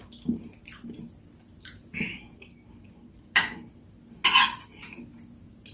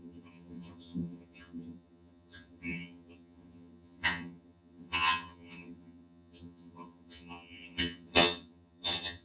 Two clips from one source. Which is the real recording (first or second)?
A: first